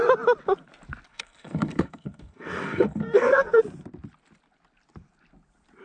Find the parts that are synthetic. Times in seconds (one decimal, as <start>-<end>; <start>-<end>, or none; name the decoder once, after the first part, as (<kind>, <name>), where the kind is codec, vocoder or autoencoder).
1.1-3.6 (codec, SNAC)